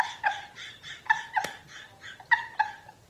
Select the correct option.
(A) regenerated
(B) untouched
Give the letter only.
B